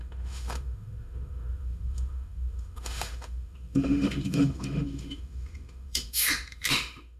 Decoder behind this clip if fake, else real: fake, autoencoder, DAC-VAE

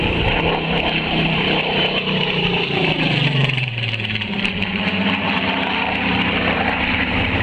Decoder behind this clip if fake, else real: fake, vocoder, BigVGAN v2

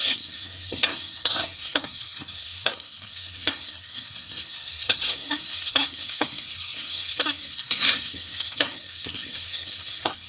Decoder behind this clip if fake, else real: fake, codec, SNAC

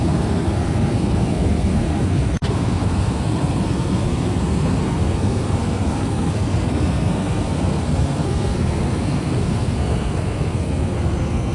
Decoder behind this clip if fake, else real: fake, codec, SNAC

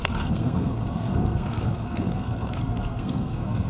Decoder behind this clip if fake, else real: fake, codec, SNAC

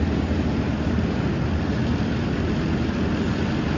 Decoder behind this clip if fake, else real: real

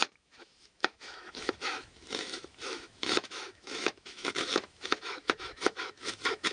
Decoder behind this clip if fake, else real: fake, autoencoder, DAC-VAE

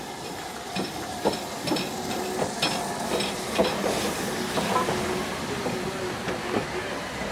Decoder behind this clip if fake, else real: real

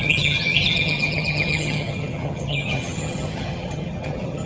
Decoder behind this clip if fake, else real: fake, vocoder, HiFi-GAN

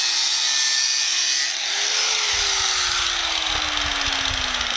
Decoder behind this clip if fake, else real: real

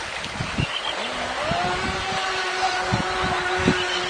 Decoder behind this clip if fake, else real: real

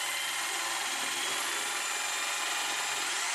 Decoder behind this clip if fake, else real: real